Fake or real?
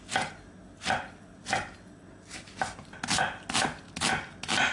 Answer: real